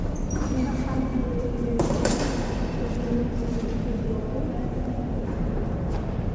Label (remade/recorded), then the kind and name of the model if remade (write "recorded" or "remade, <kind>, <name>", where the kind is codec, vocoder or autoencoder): remade, vocoder, BigVGAN v2